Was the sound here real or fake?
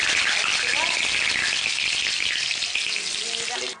real